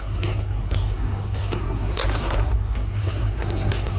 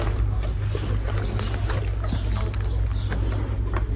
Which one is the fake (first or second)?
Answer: first